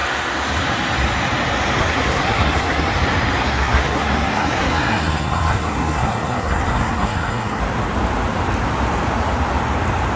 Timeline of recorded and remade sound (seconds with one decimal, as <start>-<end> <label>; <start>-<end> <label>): 0.0-1.8 recorded; 1.8-2.9 remade; 2.9-3.4 recorded; 3.4-7.6 remade; 7.6-10.2 recorded